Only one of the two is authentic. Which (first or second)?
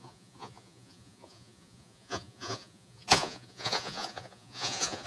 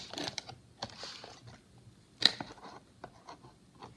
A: second